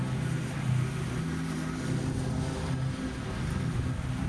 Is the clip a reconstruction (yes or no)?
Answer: no